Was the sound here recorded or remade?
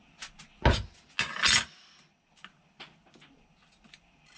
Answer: recorded